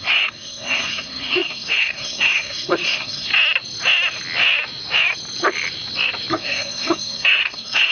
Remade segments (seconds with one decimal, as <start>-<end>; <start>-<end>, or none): 0.0-3.3; 6.3-7.9